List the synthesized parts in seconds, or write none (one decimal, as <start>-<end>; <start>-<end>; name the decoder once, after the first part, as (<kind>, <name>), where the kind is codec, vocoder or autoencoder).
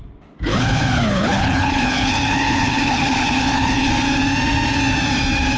0.5-3.9 (codec, HILCodec)